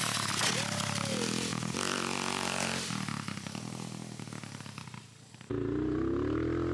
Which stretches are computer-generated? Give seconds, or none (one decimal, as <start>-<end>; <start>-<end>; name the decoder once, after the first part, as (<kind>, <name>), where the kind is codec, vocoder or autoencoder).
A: none